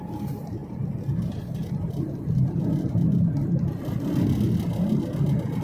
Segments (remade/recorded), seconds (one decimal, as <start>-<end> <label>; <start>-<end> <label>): 0.0-0.6 recorded; 0.6-2.6 remade; 2.6-5.6 recorded